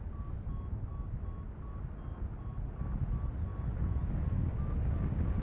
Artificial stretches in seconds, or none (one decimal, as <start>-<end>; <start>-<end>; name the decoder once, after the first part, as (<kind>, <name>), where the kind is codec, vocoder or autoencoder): none